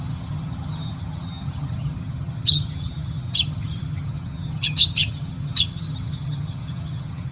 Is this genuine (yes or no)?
no